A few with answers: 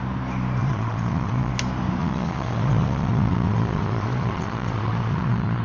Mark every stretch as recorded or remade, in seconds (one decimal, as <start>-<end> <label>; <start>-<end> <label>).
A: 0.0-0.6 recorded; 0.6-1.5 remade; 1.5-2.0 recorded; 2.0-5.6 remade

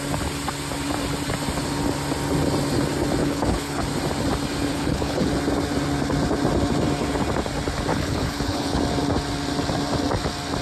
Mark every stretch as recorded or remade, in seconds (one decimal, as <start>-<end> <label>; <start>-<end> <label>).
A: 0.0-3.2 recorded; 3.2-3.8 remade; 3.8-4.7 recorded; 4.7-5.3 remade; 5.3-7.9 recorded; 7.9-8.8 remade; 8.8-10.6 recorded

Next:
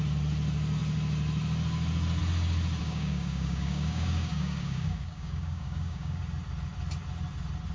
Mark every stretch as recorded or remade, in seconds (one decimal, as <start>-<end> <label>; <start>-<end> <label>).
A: 0.0-2.8 recorded; 2.8-6.2 remade; 6.2-7.7 recorded

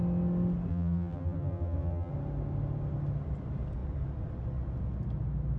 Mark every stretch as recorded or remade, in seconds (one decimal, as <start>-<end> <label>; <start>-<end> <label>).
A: 0.0-0.7 recorded; 0.7-2.1 remade; 2.1-5.6 recorded